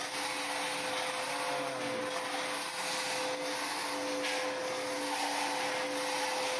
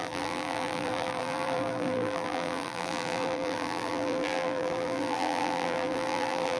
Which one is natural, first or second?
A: first